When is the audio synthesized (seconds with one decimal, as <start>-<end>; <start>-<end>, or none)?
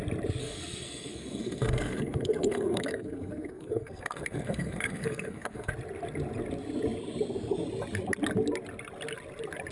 0.4-5.7